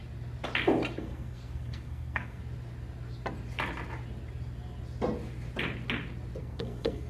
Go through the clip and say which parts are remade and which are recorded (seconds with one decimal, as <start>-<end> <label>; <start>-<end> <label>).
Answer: 0.0-1.0 recorded; 1.0-2.4 remade; 2.4-6.4 recorded; 6.4-7.1 remade